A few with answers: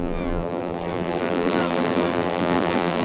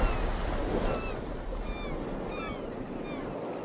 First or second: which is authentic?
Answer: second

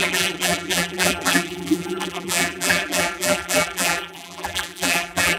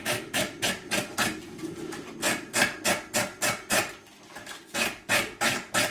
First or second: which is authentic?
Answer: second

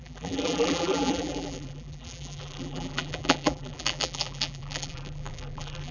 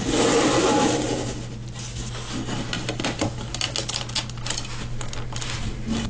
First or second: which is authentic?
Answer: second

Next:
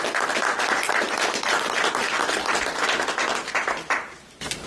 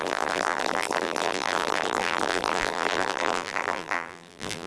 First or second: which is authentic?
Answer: first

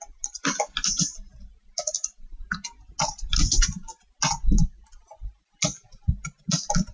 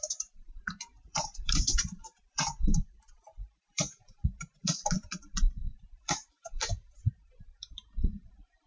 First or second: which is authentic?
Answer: first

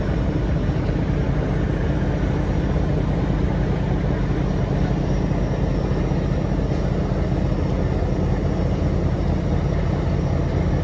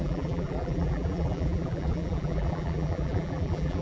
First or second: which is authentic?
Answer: first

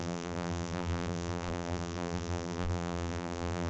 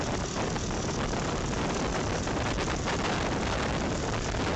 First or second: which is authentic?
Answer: second